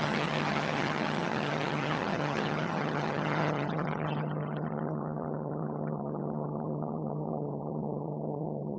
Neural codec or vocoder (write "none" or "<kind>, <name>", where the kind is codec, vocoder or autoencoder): vocoder, HiFi-GAN